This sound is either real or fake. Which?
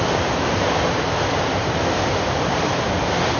real